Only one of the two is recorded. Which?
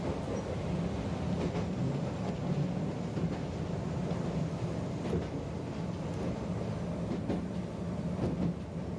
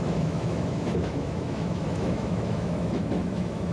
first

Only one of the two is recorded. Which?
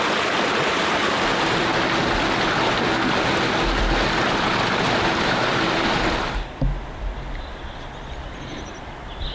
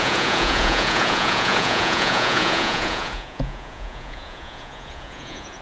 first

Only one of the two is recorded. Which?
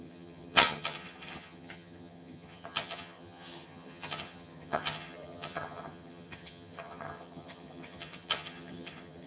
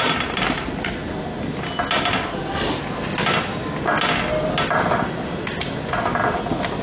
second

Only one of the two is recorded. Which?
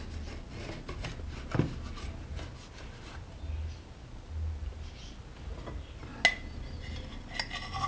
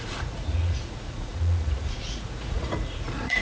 first